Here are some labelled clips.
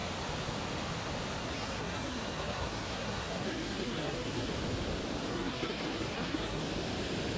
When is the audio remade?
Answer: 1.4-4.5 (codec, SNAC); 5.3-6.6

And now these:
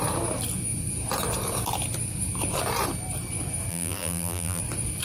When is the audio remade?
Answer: 3.7-4.6 (vocoder, BigVGAN v2)

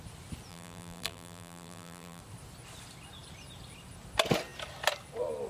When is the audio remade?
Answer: 0.5-2.2 (vocoder, BigVGAN v2)

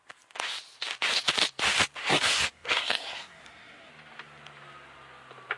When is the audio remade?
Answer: 2.0-3.9 (codec, SNAC)

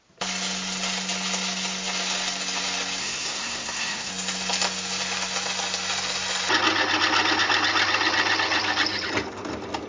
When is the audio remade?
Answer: 3.0-4.1 (codec, SNAC)

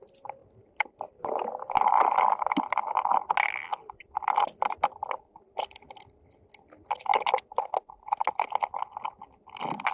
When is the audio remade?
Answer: none

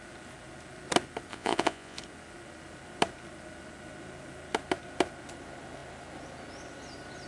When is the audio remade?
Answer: 1.3-2.0 (vocoder, Vocos)